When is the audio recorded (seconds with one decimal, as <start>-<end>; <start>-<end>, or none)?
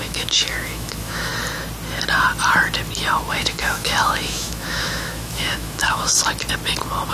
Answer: 1.3-3.3; 6.1-7.1